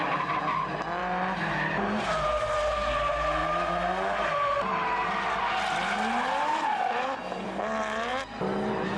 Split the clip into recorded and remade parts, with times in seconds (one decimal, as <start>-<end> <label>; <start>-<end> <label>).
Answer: 0.0-1.0 recorded; 1.0-2.0 remade; 2.0-4.5 recorded; 4.5-5.4 remade; 5.4-9.0 recorded